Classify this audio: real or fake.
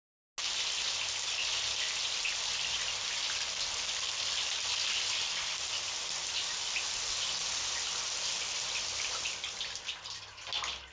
real